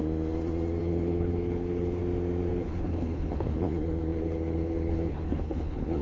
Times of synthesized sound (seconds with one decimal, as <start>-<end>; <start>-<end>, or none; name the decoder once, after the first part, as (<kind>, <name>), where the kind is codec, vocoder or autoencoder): 0.8-2.0 (codec, HILCodec); 2.5-6.0